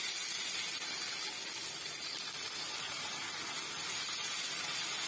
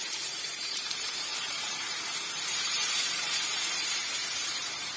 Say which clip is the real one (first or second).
first